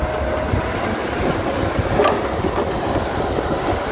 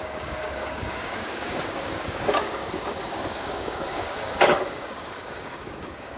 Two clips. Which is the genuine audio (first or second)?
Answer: first